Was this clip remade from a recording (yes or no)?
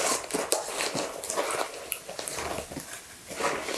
no